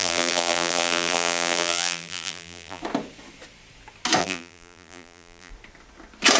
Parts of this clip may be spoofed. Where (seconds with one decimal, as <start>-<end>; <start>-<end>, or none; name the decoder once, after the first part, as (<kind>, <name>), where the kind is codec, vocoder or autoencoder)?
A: 0.0-2.8 (vocoder, BigVGAN v2); 4.2-5.5